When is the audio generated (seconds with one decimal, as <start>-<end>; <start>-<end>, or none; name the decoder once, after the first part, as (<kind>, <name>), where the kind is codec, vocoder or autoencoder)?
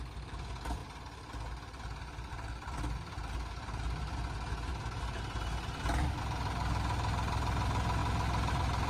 none